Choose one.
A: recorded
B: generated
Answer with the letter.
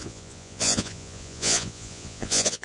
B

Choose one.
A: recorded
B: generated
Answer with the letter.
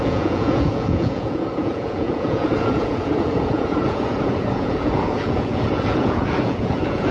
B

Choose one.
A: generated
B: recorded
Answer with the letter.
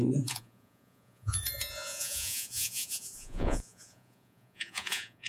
A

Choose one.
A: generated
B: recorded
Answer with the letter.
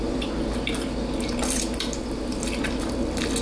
B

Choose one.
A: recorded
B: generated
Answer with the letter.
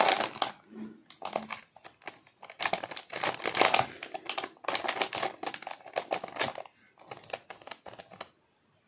A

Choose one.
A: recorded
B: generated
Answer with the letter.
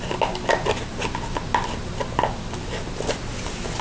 A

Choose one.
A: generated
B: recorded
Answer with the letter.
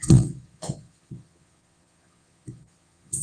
A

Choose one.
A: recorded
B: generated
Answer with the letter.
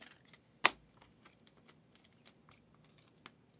A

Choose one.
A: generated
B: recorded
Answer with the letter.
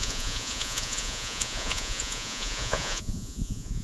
A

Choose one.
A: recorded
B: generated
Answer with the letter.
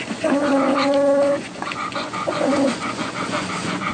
B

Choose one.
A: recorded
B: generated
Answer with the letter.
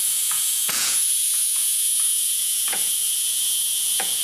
B